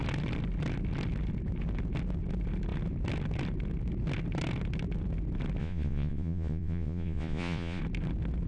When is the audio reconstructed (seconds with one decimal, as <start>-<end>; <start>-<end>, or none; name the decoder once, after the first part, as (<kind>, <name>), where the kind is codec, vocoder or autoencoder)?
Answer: 5.6-7.8 (vocoder, Vocos)